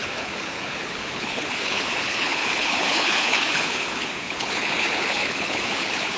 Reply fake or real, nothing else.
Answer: fake